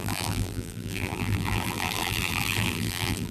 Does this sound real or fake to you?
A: fake